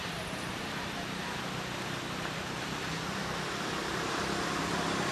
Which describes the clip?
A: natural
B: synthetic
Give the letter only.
A